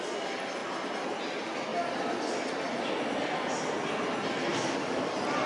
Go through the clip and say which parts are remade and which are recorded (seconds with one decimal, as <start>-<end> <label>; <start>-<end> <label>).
0.0-4.5 recorded; 4.5-5.1 remade; 5.1-5.5 recorded